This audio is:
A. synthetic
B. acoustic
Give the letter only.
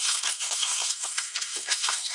A